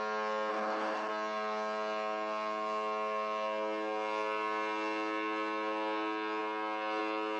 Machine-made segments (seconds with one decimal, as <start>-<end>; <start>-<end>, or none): 0.5-1.1